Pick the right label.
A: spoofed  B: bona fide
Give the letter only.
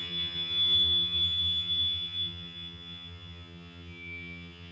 A